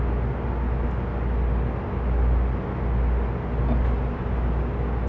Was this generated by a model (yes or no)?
no